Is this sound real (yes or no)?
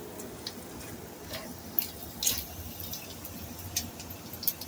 yes